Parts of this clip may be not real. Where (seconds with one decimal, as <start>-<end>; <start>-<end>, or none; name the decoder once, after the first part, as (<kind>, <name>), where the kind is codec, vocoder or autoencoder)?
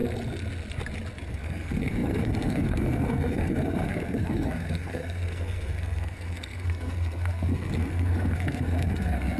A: 1.3-9.4 (codec, SNAC)